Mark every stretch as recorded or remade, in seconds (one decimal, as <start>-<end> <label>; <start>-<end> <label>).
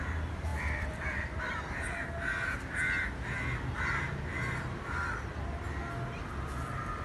0.0-0.5 recorded; 0.5-1.4 remade; 1.4-7.0 recorded